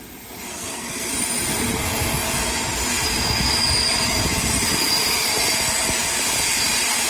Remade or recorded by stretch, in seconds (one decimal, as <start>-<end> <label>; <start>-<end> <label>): 0.0-0.5 recorded; 0.5-1.1 remade; 1.1-7.1 recorded